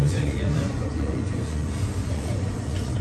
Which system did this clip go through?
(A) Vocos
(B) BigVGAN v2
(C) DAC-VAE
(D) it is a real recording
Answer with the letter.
A